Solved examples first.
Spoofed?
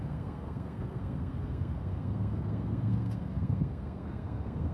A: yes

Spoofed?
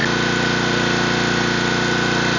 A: no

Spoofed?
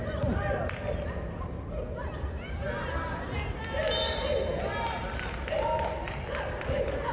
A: no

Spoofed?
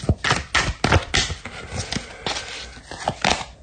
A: no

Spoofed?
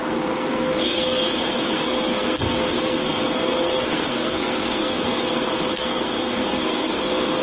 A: yes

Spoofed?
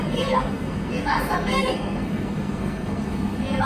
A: yes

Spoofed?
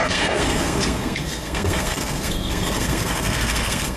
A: yes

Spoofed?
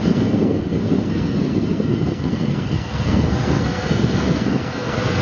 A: yes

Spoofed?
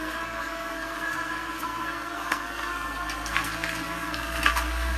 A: yes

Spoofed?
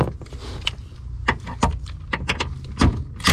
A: no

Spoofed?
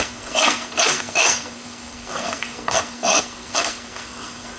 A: yes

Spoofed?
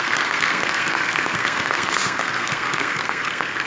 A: yes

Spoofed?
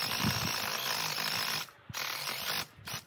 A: no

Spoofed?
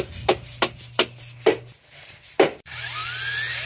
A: no